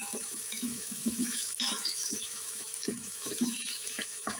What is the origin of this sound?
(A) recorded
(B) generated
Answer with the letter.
B